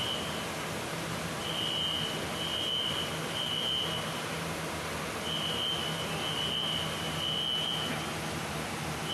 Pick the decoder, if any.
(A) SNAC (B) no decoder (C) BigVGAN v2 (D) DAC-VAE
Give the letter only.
B